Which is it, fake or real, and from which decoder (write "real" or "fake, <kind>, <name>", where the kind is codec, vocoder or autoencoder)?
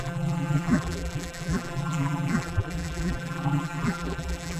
fake, vocoder, BigVGAN v2